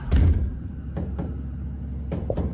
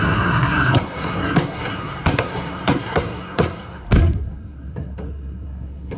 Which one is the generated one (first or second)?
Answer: second